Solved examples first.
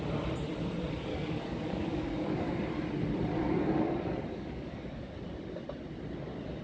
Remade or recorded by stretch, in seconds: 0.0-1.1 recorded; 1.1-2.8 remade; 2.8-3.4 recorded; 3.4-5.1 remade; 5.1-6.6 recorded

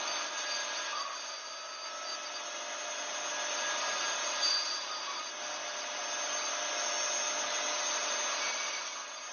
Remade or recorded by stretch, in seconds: 0.0-9.3 recorded

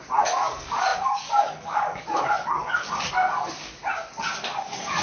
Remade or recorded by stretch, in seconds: 0.0-3.8 remade; 3.8-4.6 recorded; 4.6-5.0 remade

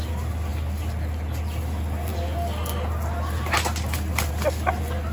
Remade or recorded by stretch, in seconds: 0.0-5.1 recorded

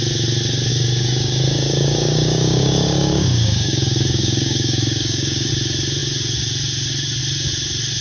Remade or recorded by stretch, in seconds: 0.0-0.7 recorded; 0.7-5.5 remade; 5.5-8.0 recorded